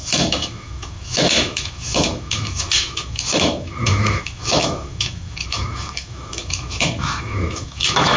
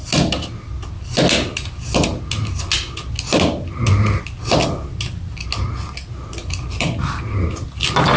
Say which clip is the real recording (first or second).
second